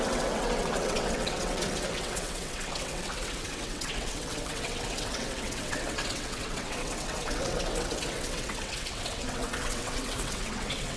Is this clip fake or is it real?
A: fake